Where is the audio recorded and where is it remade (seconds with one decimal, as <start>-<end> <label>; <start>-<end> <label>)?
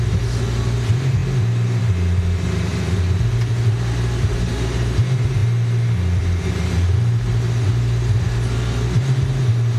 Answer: 0.0-9.8 recorded